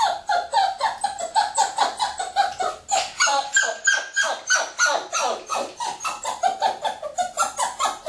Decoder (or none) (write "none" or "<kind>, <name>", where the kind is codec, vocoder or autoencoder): none